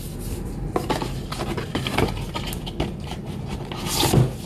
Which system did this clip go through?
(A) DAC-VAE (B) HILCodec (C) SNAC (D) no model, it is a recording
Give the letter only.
D